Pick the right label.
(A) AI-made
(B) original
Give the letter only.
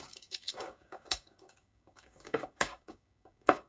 A